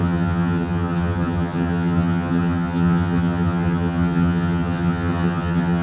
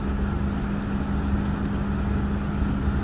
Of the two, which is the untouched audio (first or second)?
second